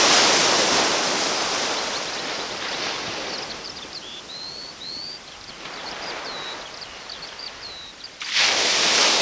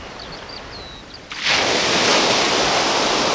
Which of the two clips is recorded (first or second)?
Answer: second